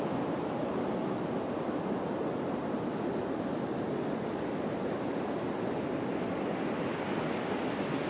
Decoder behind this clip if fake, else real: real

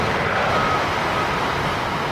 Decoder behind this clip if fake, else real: real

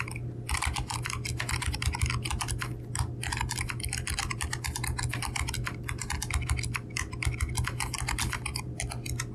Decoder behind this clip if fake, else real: real